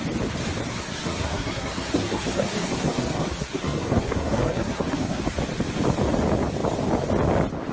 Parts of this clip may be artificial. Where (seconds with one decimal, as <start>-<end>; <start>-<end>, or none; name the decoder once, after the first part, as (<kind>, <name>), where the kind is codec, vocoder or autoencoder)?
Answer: 0.7-5.2 (codec, SNAC)